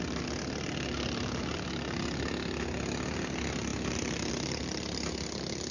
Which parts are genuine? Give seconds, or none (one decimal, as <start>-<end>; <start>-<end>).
0.0-5.7